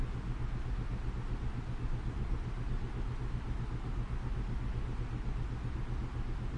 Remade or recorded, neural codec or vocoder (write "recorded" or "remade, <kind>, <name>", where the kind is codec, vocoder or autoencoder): recorded